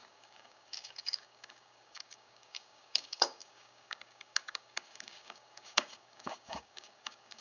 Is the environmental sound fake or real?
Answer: fake